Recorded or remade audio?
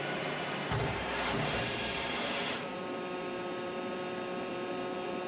remade